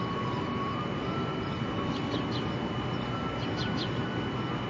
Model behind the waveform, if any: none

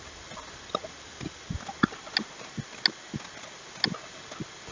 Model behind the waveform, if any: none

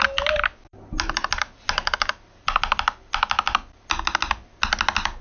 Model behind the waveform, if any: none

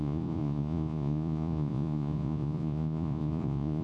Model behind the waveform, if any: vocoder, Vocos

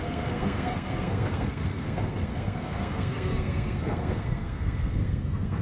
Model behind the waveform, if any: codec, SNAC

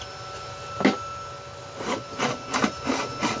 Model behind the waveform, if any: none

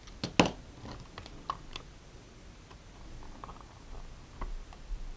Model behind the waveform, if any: none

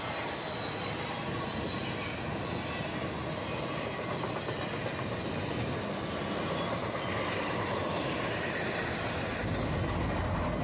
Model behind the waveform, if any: none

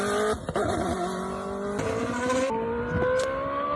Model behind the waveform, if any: none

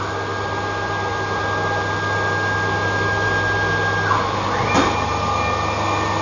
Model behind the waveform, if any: none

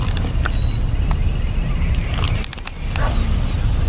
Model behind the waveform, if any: none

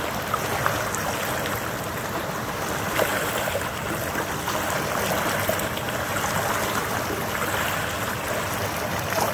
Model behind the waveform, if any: none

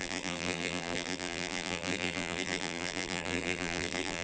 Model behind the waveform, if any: vocoder, BigVGAN v2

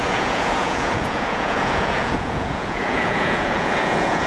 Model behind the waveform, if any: vocoder, Vocos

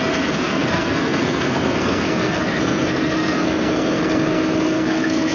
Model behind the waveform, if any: codec, SNAC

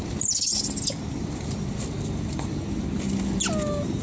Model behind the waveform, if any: none